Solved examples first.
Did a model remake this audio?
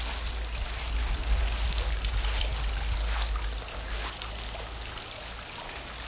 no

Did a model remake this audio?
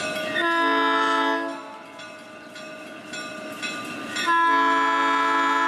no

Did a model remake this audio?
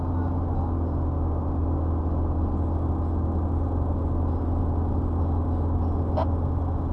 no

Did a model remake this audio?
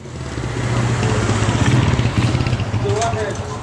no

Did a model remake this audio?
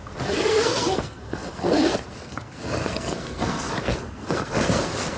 yes